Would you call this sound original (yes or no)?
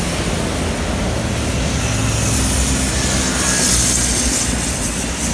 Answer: yes